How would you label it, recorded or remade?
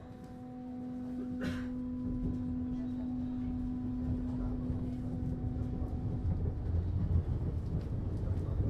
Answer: recorded